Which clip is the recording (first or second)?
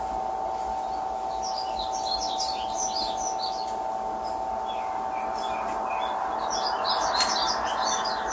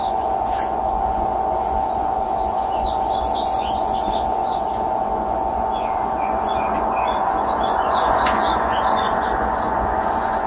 first